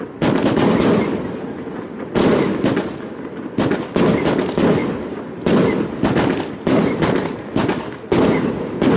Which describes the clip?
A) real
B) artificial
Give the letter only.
A